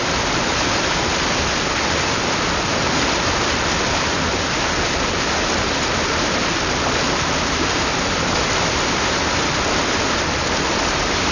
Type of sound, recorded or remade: recorded